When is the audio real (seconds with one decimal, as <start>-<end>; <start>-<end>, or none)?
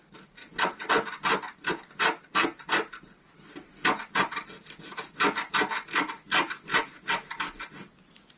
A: 0.0-0.4; 0.9-8.4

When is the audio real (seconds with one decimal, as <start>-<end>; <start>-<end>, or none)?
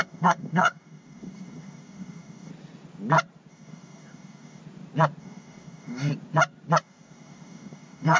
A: 2.5-3.5; 4.6-5.2; 6.1-6.8